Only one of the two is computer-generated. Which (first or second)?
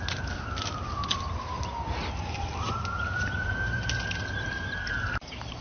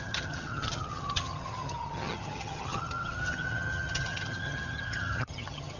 second